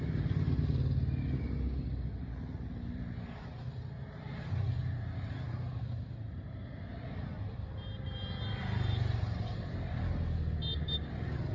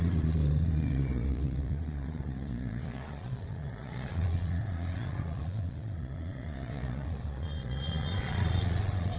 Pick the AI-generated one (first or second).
second